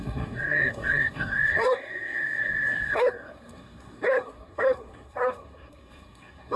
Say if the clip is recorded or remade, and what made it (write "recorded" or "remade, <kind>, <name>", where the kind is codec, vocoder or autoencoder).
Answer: remade, codec, SNAC